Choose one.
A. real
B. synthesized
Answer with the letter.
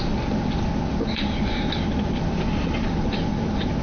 A